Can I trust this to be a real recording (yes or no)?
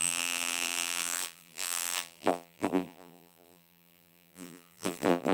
no